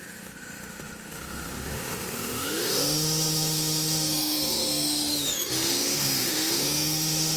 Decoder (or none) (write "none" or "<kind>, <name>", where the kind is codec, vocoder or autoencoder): autoencoder, DAC-VAE